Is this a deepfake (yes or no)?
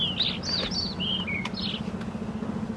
no